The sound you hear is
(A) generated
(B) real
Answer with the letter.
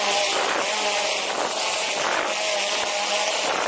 B